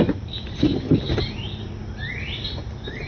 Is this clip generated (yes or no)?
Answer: no